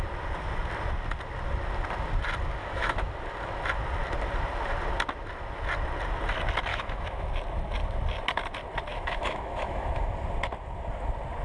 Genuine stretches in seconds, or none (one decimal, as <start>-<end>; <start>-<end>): 0.0-2.6; 3.1-6.7; 7.3-8.9; 10.1-11.4